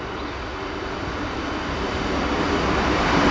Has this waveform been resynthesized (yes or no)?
no